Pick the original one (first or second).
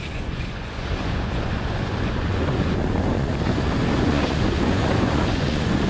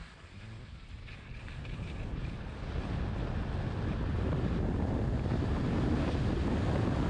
second